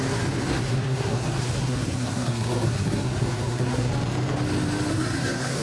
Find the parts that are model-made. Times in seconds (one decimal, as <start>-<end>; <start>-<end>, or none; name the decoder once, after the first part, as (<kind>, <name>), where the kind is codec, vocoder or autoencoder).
0.5-3.9 (codec, SNAC); 4.9-5.6